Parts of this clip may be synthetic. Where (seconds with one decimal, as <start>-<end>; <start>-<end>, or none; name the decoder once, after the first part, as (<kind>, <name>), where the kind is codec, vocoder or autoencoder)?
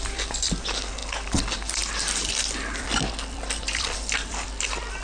none